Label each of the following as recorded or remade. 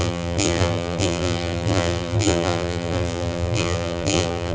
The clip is remade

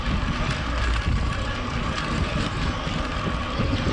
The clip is recorded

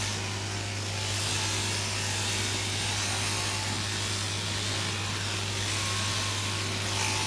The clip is recorded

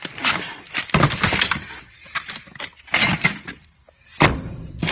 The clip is recorded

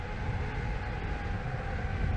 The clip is recorded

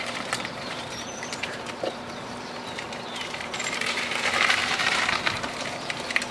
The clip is remade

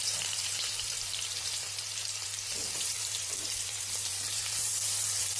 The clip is remade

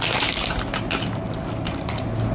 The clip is recorded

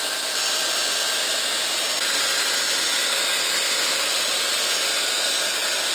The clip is recorded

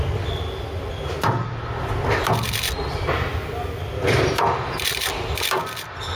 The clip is recorded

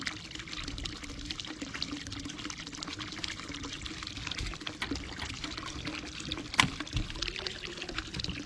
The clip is recorded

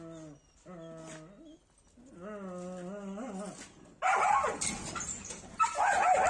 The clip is recorded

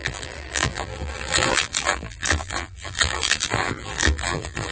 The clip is remade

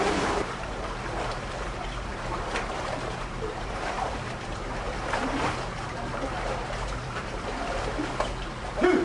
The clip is remade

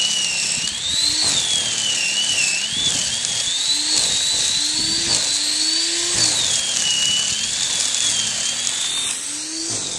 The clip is recorded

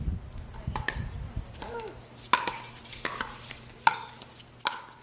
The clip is recorded